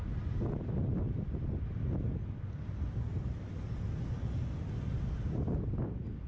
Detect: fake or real real